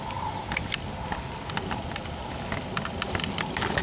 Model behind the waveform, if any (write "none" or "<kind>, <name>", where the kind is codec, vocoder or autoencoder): none